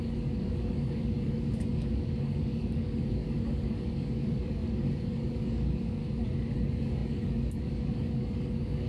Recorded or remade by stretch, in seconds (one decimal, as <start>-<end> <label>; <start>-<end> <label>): 0.0-6.0 remade; 6.0-6.5 recorded; 6.5-8.9 remade